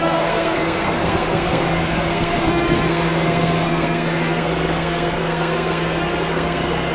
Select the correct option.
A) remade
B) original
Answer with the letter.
A